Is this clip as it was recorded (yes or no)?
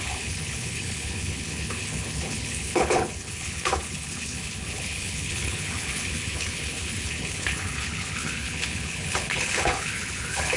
no